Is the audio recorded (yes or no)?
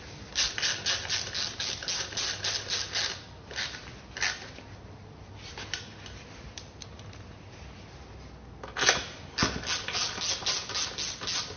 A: yes